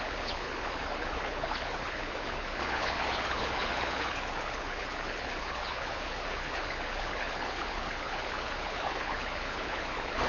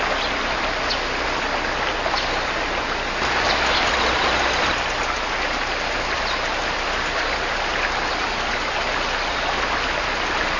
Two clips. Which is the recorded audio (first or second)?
second